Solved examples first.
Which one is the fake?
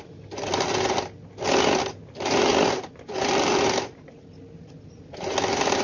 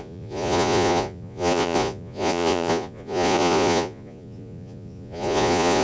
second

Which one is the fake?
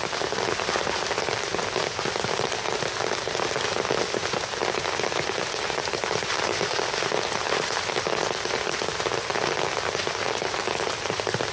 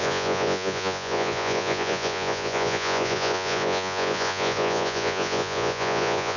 second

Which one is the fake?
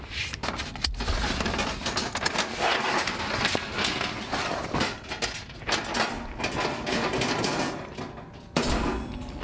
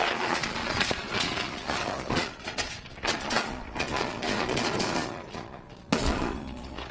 second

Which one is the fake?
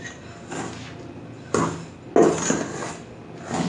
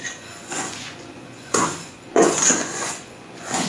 second